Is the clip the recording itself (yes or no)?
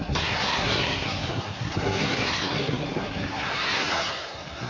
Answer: no